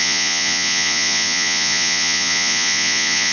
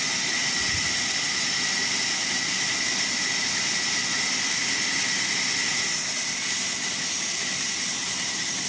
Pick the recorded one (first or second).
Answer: second